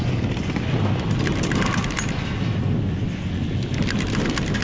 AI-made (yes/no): no